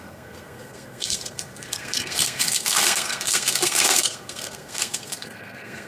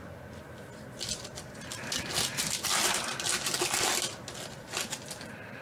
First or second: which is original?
second